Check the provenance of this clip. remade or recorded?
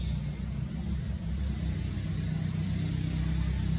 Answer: recorded